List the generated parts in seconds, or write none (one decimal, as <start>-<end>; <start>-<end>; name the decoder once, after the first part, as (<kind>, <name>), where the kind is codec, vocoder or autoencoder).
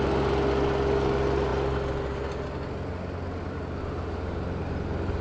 none